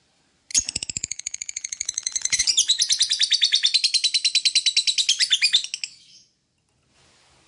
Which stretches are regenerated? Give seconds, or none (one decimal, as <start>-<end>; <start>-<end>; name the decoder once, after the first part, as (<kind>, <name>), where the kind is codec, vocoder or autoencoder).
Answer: 0.5-2.4 (vocoder, Vocos)